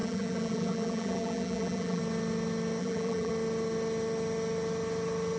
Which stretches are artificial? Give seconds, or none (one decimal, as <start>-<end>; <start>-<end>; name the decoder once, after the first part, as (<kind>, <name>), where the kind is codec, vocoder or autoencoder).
0.0-2.0 (vocoder, BigVGAN v2); 2.8-3.3